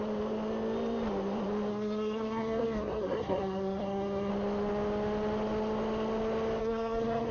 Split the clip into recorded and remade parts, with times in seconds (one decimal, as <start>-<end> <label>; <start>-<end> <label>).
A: 0.0-1.7 recorded; 1.7-4.3 remade; 4.3-6.6 recorded; 6.6-7.3 remade

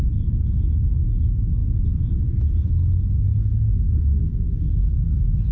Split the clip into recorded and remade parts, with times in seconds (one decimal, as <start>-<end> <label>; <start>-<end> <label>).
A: 0.0-5.5 recorded

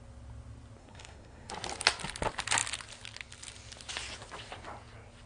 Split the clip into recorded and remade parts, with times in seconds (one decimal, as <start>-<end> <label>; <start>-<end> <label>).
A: 0.0-0.8 recorded; 0.8-1.5 remade; 1.5-5.3 recorded

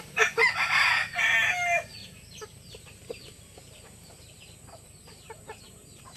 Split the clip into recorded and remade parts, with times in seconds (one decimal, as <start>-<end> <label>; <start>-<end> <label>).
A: 0.0-6.2 recorded

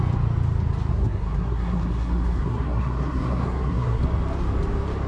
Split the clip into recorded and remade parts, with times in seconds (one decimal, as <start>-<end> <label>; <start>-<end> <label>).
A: 0.0-0.9 recorded; 0.9-4.0 remade; 4.0-5.1 recorded

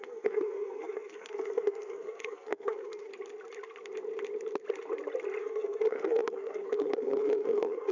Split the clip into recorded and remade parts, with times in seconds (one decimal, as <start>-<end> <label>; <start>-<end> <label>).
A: 0.0-3.1 remade; 3.1-5.4 recorded; 5.4-7.9 remade

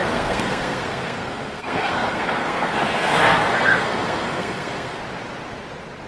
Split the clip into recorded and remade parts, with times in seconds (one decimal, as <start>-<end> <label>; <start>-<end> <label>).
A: 0.0-5.0 remade; 5.0-6.1 recorded